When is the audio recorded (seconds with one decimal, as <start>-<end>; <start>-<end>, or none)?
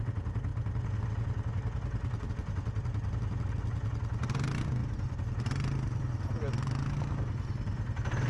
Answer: 0.0-8.3